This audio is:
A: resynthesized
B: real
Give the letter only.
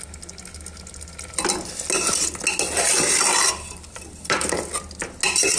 B